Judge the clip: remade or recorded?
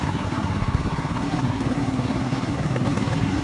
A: remade